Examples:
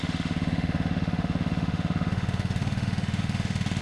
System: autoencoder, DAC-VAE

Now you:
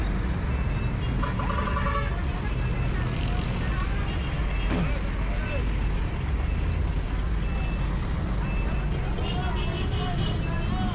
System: none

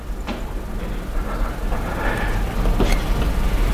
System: none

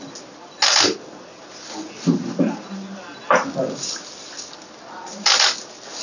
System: none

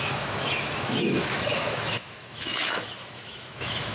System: autoencoder, DAC-VAE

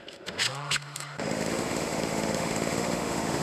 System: autoencoder, DAC-VAE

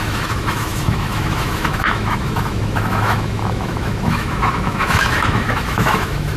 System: autoencoder, DAC-VAE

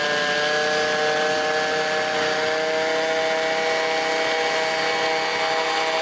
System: none